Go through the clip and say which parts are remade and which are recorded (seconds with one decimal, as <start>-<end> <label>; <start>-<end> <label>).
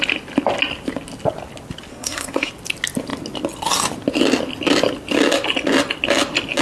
0.0-1.9 recorded; 1.9-2.5 remade; 2.5-6.6 recorded